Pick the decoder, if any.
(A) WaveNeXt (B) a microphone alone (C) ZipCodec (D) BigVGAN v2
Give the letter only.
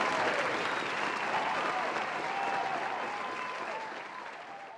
B